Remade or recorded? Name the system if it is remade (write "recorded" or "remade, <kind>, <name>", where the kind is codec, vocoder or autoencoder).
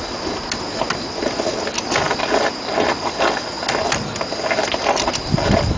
recorded